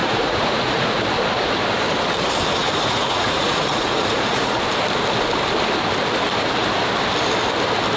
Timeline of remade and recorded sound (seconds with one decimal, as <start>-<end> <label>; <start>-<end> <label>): 0.0-1.0 remade; 1.0-2.6 recorded; 2.6-4.6 remade; 4.6-8.0 recorded